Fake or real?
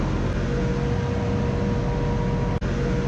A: real